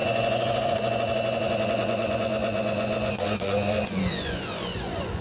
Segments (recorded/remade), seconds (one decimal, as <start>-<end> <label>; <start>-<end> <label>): 0.0-5.2 remade